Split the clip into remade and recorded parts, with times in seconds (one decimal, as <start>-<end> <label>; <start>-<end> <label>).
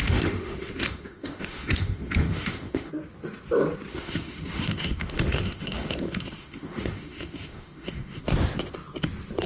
0.0-2.9 remade; 2.9-3.9 recorded; 3.9-8.2 remade; 8.2-9.5 recorded